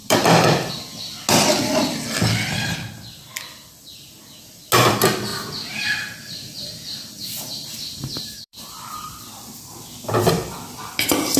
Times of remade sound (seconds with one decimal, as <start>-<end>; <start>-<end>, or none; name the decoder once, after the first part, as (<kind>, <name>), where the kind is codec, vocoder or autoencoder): 0.0-0.7 (vocoder, BigVGAN v2); 5.3-8.9